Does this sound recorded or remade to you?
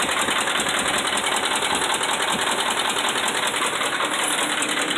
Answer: recorded